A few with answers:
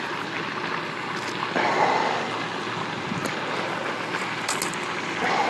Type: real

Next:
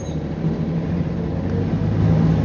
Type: real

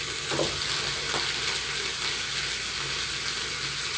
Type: real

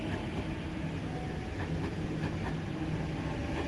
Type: real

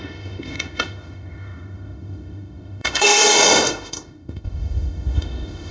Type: fake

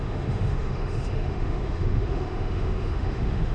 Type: fake